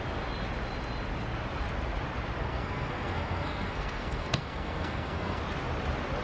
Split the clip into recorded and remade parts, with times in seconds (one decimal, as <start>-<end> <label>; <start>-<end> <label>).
0.0-2.4 recorded; 2.4-5.4 remade; 5.4-6.2 recorded